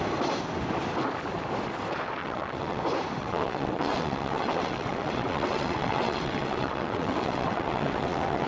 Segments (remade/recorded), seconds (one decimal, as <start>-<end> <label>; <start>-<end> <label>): 0.0-2.2 recorded; 2.2-2.8 remade; 2.8-3.2 recorded; 3.2-8.5 remade